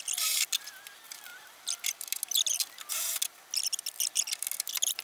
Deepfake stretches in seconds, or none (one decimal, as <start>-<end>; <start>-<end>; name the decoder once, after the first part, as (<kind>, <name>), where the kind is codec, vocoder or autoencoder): none